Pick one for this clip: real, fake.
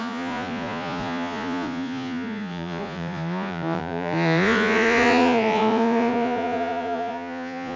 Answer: fake